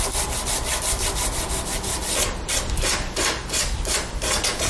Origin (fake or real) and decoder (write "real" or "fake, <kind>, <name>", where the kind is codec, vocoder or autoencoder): real